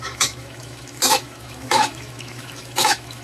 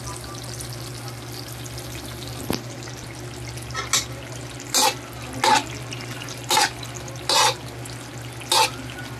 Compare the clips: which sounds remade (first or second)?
first